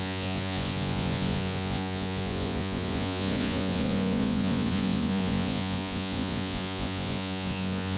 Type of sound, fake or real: fake